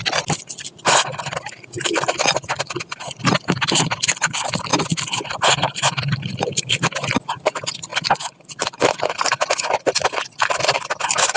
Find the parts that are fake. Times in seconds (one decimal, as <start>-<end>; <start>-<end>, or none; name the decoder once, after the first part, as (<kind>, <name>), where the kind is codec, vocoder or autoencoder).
0.0-4.7 (vocoder, BigVGAN v2); 5.5-7.9; 9.2-11.4